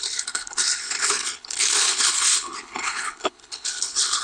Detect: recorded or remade remade